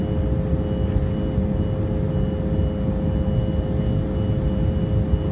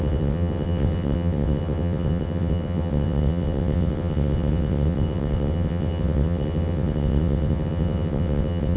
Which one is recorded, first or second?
first